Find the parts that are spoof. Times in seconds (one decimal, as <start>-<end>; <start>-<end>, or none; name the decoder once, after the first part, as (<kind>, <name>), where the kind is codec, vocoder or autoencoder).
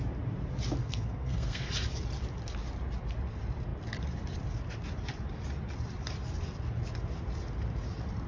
0.8-1.7 (codec, SNAC)